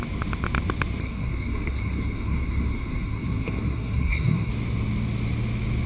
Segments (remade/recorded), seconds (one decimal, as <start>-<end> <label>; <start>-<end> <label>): 0.0-1.0 recorded; 1.0-4.5 remade; 4.5-5.9 recorded